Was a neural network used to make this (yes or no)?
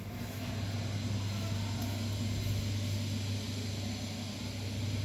no